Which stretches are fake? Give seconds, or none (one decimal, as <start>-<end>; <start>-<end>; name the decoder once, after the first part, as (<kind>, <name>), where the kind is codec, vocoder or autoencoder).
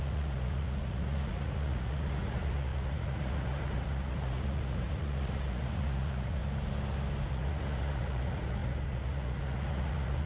0.0-6.4 (vocoder, Vocos); 7.3-10.3